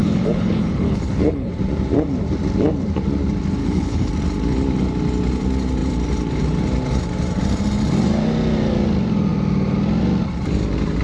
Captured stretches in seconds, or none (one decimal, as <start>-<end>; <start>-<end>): 1.5-3.6; 4.1-11.0